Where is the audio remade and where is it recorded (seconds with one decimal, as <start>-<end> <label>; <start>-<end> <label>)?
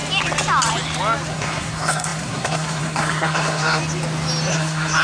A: 0.0-1.3 recorded; 1.3-3.8 remade; 3.8-4.5 recorded; 4.5-5.0 remade